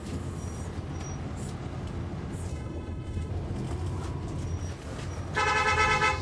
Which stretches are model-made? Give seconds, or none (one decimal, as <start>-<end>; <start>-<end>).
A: 2.5-3.3